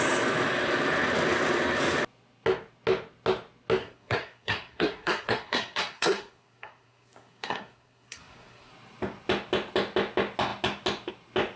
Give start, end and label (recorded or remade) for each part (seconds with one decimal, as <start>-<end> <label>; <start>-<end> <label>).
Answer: 0.0-3.8 recorded; 3.8-8.7 remade; 8.7-11.6 recorded